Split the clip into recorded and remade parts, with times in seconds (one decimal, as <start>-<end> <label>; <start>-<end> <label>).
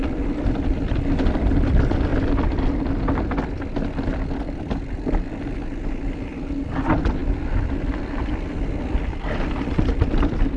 0.0-2.1 remade; 2.1-6.6 recorded; 6.6-7.2 remade; 7.2-8.9 recorded; 8.9-10.6 remade